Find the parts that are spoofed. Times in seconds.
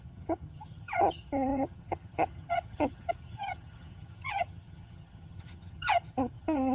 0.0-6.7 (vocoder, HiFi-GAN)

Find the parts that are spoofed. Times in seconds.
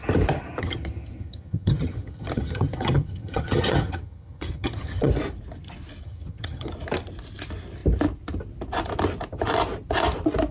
0.6-5.1 (vocoder, HiFi-GAN); 6.0-6.7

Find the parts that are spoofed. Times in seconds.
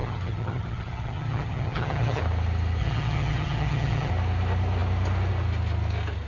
0.0-2.2 (vocoder, HiFi-GAN); 2.8-4.1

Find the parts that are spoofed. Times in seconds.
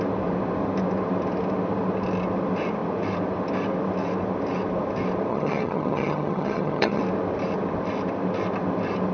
5.3-7.0 (vocoder, HiFi-GAN)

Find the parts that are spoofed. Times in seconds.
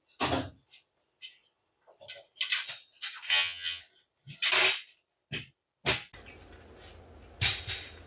3.3-3.8 (vocoder, HiFi-GAN)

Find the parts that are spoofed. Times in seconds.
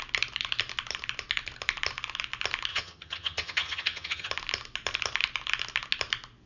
2.7-4.3 (vocoder, HiFi-GAN)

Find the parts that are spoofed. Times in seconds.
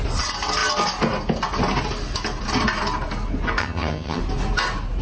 3.6-4.2 (vocoder, HiFi-GAN)